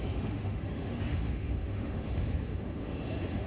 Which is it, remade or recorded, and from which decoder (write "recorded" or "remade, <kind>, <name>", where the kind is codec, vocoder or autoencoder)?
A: remade, autoencoder, DAC-VAE